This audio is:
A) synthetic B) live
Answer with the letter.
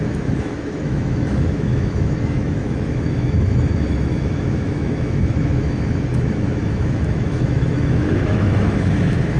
A